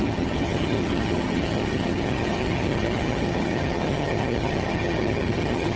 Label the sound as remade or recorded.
remade